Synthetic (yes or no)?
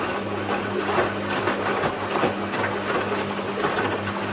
no